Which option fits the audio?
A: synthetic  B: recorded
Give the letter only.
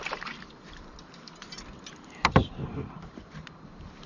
A